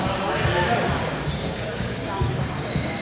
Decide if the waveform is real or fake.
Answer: fake